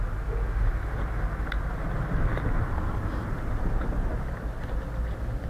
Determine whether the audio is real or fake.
real